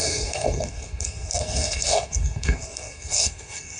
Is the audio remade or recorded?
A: remade